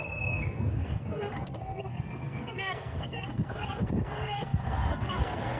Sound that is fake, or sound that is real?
fake